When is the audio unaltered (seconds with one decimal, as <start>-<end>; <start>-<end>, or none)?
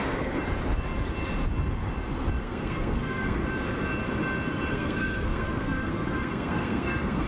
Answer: 0.4-2.4; 3.4-4.7